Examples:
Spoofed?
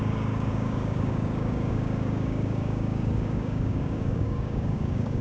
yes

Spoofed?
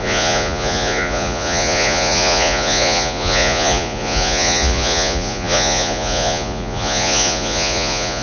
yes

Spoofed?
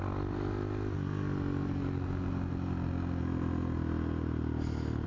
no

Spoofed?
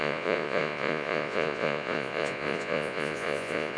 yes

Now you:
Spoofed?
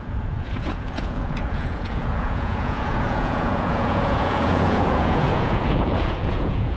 yes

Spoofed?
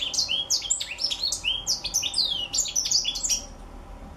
no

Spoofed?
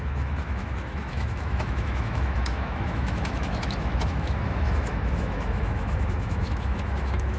yes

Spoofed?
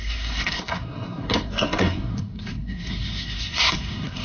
yes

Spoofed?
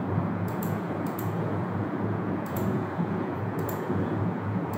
yes